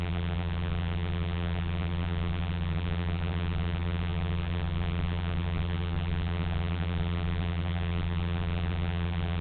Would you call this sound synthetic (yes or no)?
yes